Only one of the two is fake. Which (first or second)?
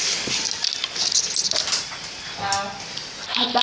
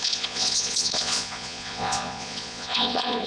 second